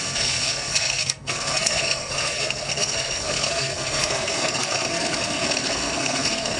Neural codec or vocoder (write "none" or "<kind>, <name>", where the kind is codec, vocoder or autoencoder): codec, SNAC